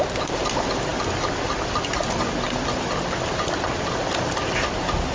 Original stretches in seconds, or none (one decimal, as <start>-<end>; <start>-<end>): 0.0-5.1